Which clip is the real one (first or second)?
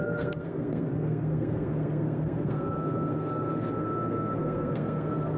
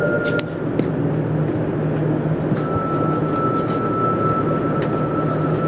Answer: second